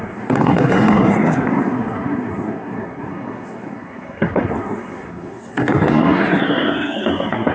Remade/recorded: remade